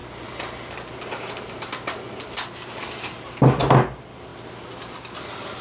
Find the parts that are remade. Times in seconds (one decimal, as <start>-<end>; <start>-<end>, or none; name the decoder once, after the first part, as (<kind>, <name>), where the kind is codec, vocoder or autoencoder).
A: none